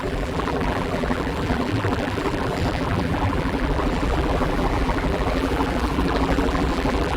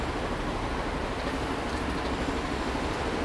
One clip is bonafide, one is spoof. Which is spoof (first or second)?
first